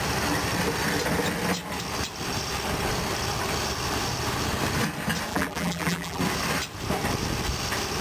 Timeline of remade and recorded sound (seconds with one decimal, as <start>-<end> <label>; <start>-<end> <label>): 0.0-5.3 recorded; 5.3-6.2 remade; 6.2-8.0 recorded

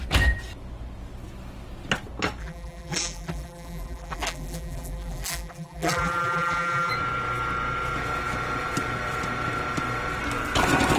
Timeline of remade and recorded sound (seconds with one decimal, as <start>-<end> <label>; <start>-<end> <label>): 0.0-2.4 recorded; 2.4-6.9 remade; 6.9-11.0 recorded